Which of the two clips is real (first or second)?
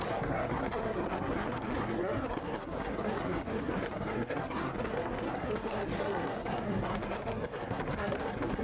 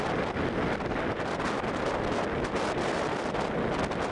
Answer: second